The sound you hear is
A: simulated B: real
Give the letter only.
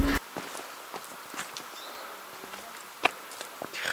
B